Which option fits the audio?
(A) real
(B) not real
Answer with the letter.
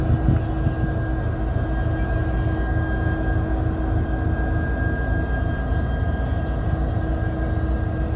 A